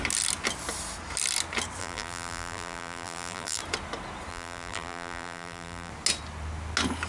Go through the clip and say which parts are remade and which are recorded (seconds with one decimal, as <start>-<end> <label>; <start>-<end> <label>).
0.0-1.8 recorded; 1.8-3.6 remade; 3.6-4.3 recorded; 4.3-5.9 remade; 5.9-7.1 recorded